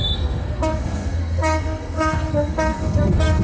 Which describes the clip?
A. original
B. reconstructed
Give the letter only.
B